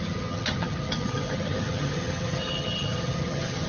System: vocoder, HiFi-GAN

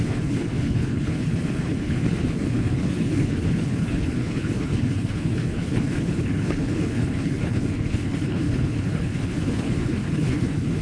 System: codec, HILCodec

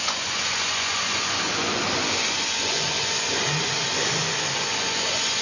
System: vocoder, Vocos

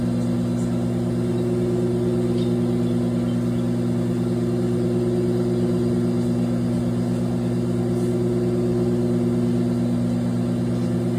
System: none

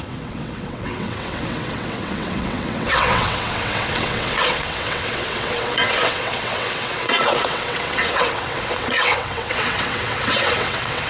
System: vocoder, WaveNeXt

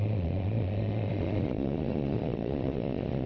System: vocoder, Vocos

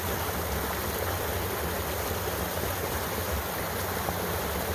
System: vocoder, BigVGAN v2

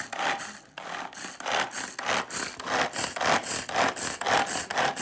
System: none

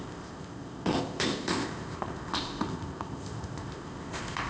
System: codec, ZipCodec